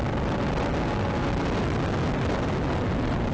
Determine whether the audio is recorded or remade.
recorded